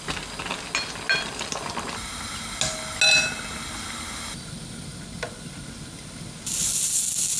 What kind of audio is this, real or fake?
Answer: real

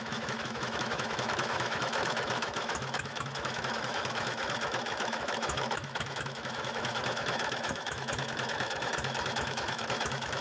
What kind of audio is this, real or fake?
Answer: fake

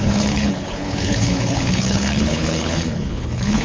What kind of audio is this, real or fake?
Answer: fake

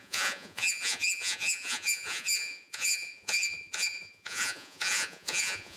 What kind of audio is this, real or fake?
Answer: fake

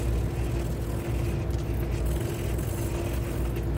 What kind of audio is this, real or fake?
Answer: real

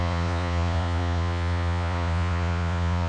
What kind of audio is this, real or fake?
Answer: fake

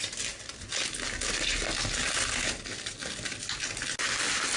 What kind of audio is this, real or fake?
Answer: real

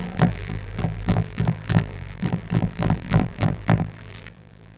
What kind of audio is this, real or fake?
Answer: fake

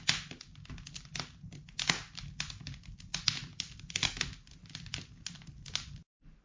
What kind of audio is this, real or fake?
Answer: real